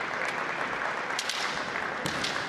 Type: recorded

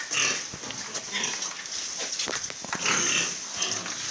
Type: recorded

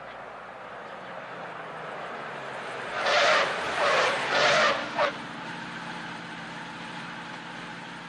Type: recorded